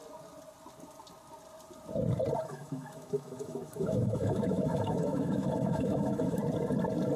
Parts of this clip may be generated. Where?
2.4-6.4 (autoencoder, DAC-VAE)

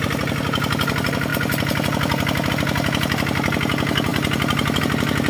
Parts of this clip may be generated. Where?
none

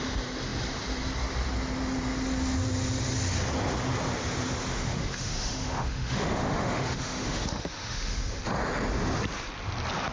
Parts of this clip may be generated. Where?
4.7-8.4 (autoencoder, DAC-VAE)

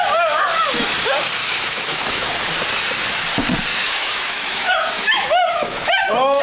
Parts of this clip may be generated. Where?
1.4-2.3 (autoencoder, DAC-VAE); 3.7-6.4

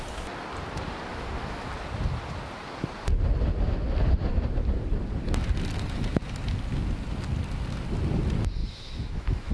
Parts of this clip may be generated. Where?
1.1-1.7 (autoencoder, DAC-VAE); 8.6-9.5